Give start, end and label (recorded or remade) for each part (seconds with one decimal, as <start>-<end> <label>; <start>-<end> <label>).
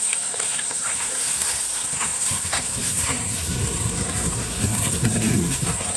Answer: 0.0-6.0 remade